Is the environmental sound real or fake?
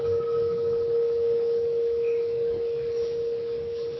fake